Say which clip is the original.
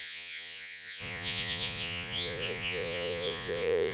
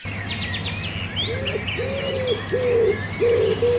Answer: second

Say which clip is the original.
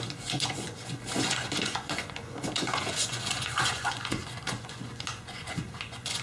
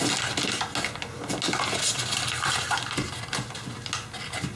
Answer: second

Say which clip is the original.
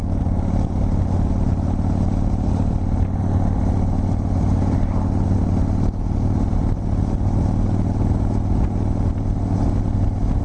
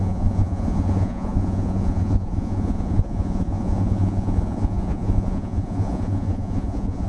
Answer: first